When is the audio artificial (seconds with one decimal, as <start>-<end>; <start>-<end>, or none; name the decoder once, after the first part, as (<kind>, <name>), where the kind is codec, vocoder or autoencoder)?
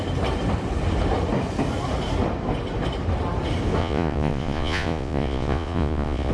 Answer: 3.8-6.3 (vocoder, Vocos)